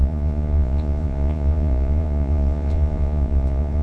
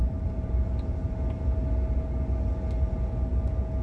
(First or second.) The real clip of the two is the second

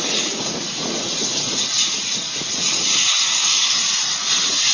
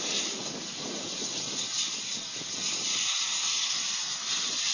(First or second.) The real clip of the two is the second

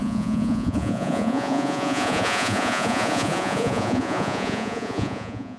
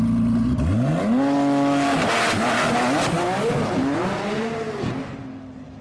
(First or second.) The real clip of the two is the second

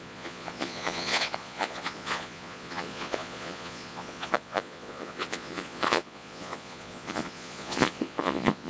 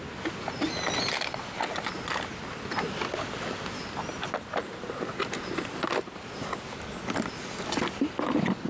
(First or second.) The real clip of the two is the second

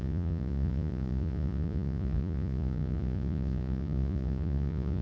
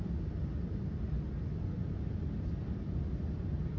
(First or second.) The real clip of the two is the second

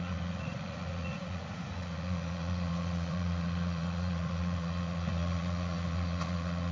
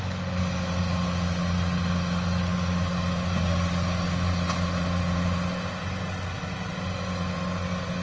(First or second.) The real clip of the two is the second